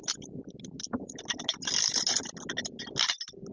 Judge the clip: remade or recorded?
recorded